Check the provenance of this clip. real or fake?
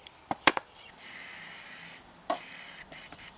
fake